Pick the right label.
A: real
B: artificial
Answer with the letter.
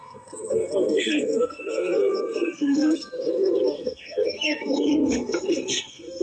B